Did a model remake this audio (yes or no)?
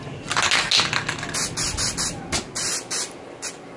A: no